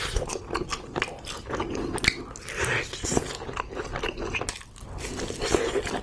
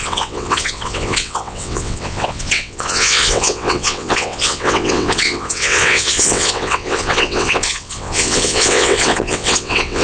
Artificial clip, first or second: second